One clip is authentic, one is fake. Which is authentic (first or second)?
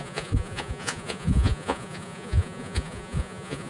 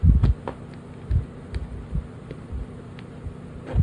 second